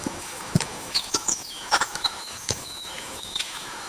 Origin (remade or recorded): remade